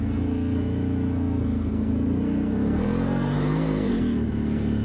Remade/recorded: remade